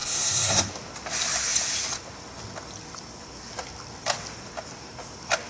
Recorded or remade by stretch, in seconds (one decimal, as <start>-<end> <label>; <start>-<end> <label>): 0.0-0.7 remade; 0.7-5.5 recorded